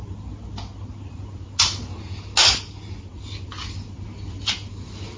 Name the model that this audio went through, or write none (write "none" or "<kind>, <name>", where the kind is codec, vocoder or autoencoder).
none